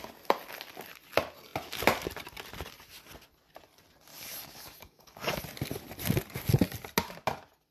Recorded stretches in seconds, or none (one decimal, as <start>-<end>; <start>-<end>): 0.0-4.1; 5.4-7.7

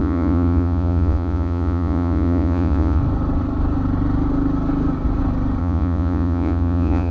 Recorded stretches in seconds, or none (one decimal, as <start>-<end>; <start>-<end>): 3.0-5.6

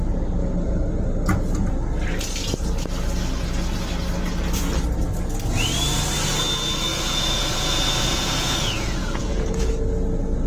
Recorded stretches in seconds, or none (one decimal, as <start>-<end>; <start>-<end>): 0.0-6.9; 9.7-10.5

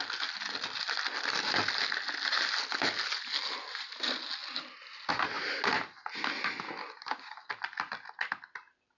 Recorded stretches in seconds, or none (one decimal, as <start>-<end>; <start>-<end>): 0.0-6.8; 7.5-9.0

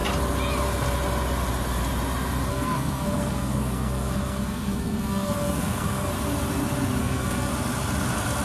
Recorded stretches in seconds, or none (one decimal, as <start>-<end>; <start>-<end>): 0.0-2.5; 6.1-7.0; 7.5-8.4

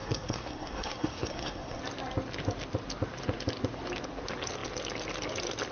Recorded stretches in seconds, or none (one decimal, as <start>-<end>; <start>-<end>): 1.8-5.7

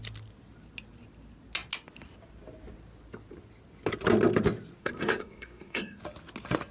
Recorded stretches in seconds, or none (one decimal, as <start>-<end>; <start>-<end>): 0.0-4.8; 6.0-6.7